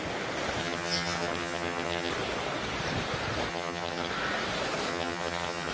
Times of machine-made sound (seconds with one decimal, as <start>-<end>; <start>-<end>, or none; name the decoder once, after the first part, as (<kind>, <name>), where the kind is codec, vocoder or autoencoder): 0.6-2.1 (vocoder, HiFi-GAN); 3.5-4.1; 4.9-5.7

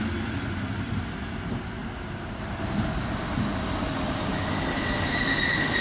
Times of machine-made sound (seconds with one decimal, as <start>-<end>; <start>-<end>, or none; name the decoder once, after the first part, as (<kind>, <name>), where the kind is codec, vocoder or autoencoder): none

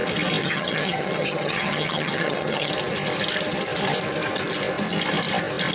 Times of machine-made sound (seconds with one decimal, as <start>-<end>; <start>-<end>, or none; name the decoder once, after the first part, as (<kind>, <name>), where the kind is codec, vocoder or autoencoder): 0.4-2.7 (vocoder, HiFi-GAN)